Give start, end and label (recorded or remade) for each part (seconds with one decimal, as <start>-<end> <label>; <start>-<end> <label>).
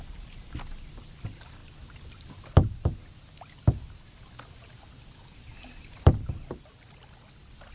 0.0-7.7 recorded